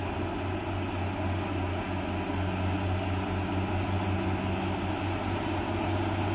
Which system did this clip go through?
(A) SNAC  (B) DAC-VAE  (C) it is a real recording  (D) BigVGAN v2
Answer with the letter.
C